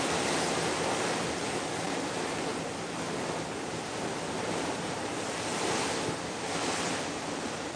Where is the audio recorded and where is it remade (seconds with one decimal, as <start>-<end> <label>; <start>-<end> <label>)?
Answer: 0.0-7.8 recorded